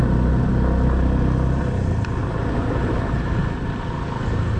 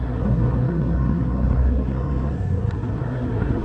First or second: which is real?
first